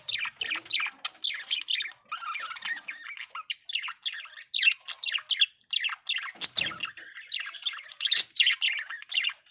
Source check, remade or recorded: recorded